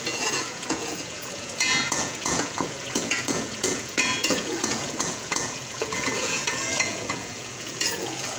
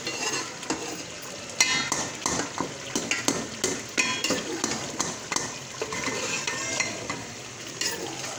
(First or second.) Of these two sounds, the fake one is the first